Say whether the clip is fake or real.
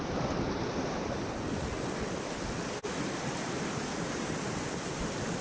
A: real